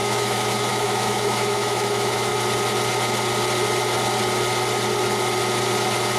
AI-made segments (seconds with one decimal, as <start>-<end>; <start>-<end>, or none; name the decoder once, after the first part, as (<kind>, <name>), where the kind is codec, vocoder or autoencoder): 0.0-2.3 (autoencoder, DAC-VAE)